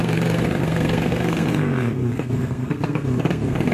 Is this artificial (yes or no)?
yes